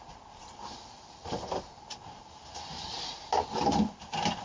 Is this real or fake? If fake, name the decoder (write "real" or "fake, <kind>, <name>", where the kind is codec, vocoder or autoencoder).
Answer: real